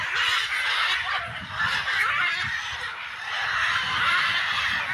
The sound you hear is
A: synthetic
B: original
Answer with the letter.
B